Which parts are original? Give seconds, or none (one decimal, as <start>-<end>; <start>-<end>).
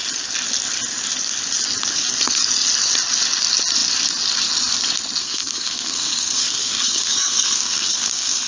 0.0-5.2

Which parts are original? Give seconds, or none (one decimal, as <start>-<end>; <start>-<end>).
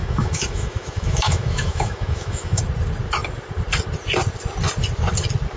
2.6-5.6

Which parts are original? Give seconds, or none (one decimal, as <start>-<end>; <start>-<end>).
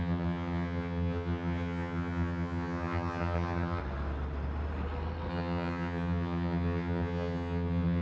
3.8-5.3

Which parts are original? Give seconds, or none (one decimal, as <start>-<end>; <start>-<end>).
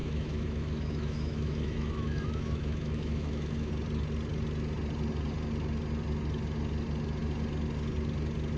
3.7-8.6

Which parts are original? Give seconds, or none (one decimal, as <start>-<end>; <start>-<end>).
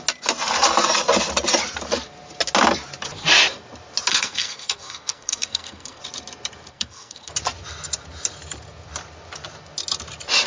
0.0-4.1; 6.0-6.7; 7.3-10.5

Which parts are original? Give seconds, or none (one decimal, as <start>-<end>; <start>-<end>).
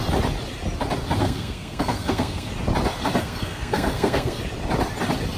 0.0-1.2; 2.5-3.2; 4.4-5.4